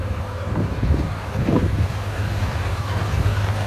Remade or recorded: remade